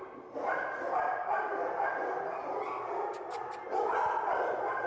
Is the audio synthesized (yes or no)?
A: no